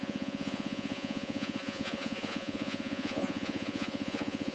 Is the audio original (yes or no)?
no